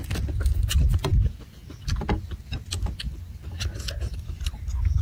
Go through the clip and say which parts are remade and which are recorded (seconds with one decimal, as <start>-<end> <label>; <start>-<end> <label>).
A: 0.0-5.0 recorded